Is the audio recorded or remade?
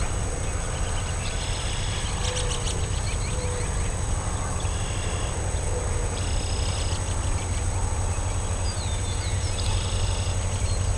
recorded